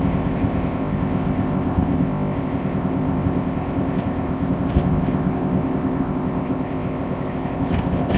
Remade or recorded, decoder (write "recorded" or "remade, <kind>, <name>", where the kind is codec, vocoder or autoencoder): remade, codec, ZipCodec